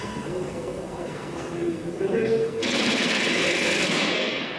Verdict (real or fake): fake